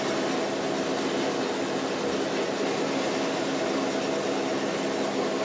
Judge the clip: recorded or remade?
recorded